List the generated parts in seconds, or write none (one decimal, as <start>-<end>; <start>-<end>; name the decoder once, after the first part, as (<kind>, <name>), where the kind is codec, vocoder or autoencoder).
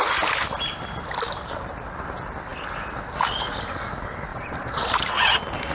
4.3-4.8 (vocoder, Vocos)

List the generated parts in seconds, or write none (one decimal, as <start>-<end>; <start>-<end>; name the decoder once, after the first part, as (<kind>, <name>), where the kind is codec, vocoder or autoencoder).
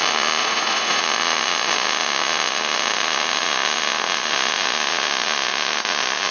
0.4-1.0 (vocoder, Vocos)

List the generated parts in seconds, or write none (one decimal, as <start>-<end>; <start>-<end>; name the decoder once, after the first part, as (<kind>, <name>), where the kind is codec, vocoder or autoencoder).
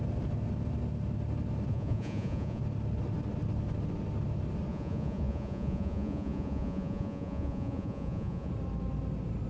1.7-2.6 (vocoder, Vocos); 4.7-8.5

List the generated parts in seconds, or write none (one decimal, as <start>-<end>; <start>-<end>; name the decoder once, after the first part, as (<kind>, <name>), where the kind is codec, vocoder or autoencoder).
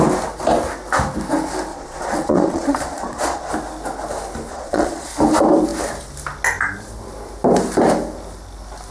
1.7-3.5 (vocoder, Vocos); 4.5-5.1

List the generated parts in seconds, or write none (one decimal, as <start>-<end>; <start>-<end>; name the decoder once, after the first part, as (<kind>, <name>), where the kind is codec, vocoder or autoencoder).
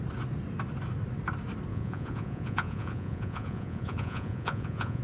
1.7-5.0 (vocoder, Vocos)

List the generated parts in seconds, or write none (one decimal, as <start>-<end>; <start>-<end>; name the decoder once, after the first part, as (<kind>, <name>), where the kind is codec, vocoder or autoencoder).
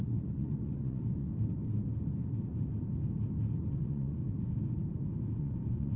0.0-1.3 (vocoder, Vocos); 3.7-4.2; 5.4-6.0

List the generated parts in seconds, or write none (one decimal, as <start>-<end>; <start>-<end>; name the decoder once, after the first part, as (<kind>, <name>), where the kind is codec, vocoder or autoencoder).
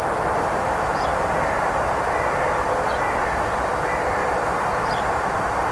none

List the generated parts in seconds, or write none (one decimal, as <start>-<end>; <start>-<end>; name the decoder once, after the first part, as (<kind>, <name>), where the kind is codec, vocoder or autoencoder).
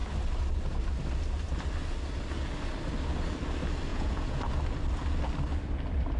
3.9-4.4 (vocoder, Vocos)